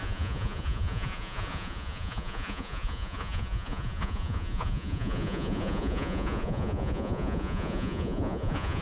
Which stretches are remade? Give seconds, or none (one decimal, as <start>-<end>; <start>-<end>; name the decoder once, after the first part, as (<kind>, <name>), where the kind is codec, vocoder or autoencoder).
0.0-8.8 (vocoder, Vocos)